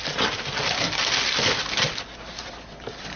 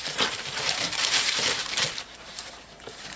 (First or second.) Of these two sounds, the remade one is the second